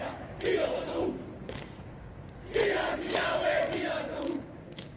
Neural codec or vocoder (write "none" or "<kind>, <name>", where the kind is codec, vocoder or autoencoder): codec, DAC